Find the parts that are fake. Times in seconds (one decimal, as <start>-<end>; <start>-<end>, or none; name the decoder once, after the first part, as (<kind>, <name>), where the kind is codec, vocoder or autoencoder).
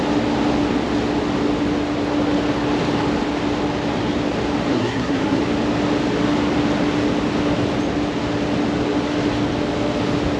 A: 4.7-5.4 (codec, SNAC)